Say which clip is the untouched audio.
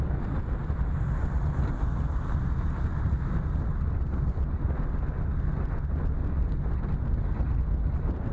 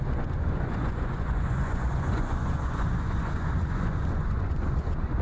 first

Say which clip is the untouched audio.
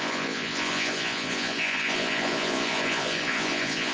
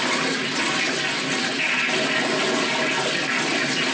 second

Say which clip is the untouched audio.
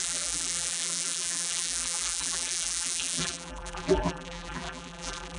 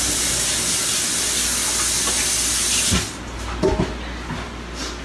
second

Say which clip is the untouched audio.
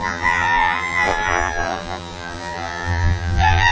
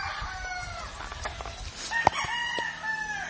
second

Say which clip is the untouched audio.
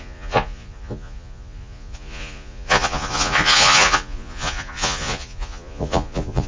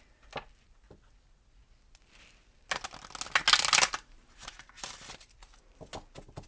second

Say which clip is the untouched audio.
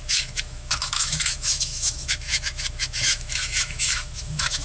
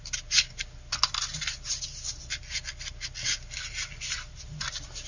second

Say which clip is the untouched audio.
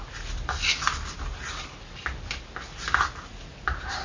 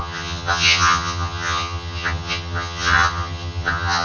first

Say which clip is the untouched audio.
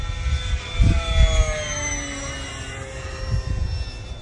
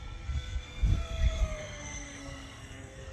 first